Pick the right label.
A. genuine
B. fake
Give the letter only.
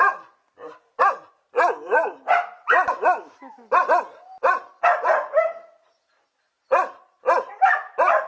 A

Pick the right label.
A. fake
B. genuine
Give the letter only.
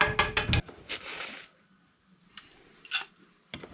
B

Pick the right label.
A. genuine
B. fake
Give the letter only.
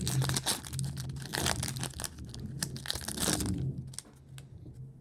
A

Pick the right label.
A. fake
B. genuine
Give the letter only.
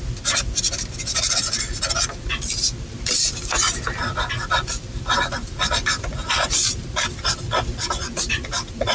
A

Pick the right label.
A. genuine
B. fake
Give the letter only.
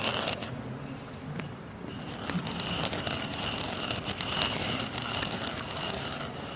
A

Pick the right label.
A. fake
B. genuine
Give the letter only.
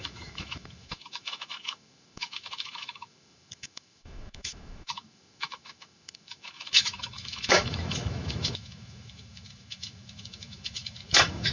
A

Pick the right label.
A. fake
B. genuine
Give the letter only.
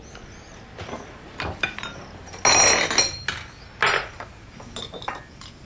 B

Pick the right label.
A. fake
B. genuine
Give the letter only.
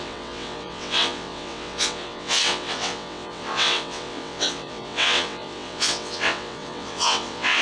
A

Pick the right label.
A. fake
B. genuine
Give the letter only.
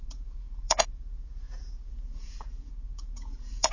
A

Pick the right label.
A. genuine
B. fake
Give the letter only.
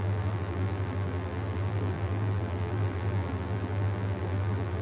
B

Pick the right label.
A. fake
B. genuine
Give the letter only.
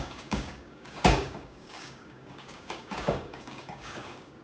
A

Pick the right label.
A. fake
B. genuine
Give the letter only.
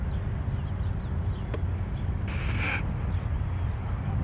B